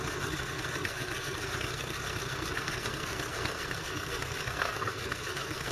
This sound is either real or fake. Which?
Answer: fake